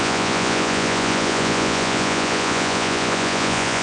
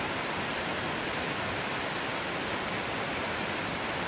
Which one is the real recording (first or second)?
second